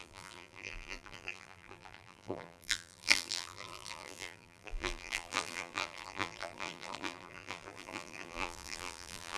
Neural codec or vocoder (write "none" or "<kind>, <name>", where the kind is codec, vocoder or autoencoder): vocoder, BigVGAN v2